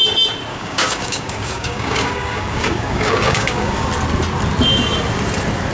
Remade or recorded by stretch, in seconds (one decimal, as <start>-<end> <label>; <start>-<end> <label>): 0.0-0.5 recorded; 0.5-3.9 remade; 3.9-5.7 recorded